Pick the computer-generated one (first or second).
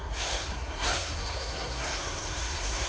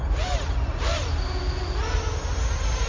first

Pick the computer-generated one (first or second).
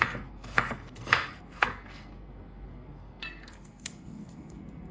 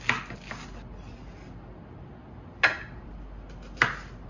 first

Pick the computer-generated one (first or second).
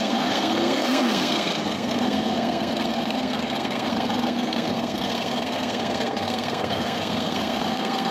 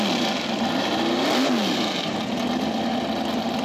first